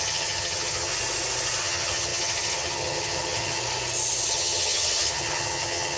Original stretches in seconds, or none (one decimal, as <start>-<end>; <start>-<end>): 0.9-1.6; 3.6-4.3